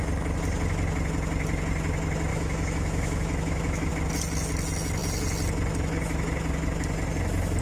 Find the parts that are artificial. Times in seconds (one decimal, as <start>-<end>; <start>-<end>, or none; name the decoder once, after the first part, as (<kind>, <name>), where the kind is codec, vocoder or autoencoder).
2.3-3.9 (autoencoder, DAC-VAE)